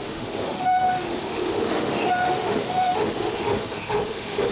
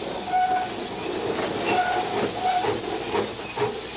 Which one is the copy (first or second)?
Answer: first